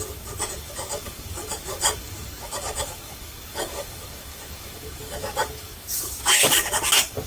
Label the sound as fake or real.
fake